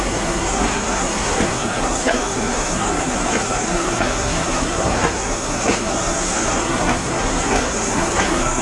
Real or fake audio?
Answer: fake